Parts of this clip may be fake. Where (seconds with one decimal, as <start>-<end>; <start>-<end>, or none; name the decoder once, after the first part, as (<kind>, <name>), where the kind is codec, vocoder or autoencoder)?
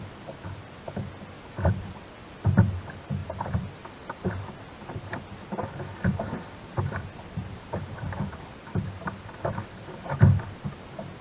none